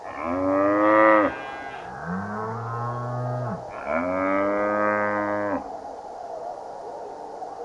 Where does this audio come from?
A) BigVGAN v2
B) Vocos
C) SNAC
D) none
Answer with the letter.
D